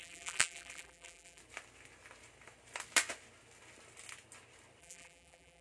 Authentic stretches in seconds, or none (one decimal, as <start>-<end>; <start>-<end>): 1.4-4.8